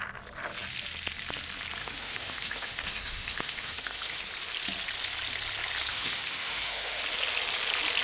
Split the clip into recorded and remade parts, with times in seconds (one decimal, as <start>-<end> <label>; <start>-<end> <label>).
0.0-1.8 recorded; 1.8-4.2 remade; 4.2-5.9 recorded; 5.9-7.0 remade; 7.0-8.0 recorded